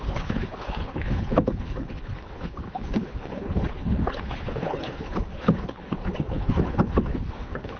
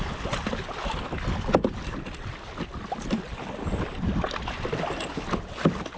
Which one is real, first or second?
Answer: second